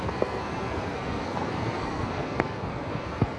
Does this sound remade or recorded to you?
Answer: remade